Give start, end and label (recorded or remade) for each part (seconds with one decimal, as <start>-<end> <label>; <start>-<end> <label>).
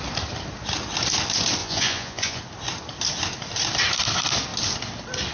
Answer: 0.0-1.6 recorded; 1.6-2.4 remade; 2.4-5.3 recorded